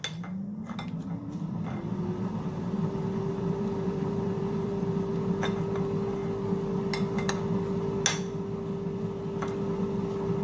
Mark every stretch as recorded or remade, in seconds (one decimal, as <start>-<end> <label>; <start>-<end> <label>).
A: 0.0-1.2 recorded; 1.2-5.1 remade; 5.1-10.4 recorded